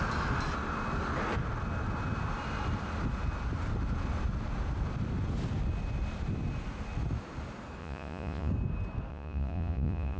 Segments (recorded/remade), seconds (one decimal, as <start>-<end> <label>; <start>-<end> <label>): 0.0-7.8 recorded; 7.8-8.5 remade; 8.5-9.1 recorded; 9.1-10.2 remade